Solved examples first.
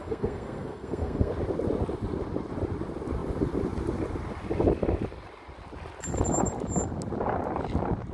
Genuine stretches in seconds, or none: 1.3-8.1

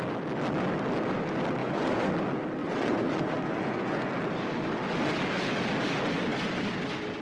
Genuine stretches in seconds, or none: 0.0-1.6; 2.1-2.6; 4.1-7.2

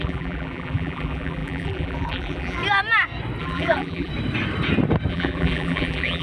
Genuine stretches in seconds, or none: 2.6-3.4; 4.1-5.1

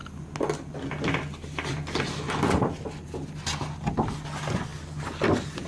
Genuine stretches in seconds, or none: 0.0-5.7

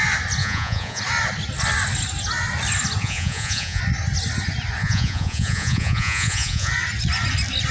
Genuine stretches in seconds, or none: 0.0-0.4; 1.0-3.0; 3.8-4.8; 6.7-7.7

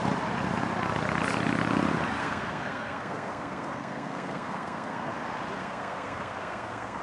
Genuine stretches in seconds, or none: 0.0-2.2; 5.1-5.6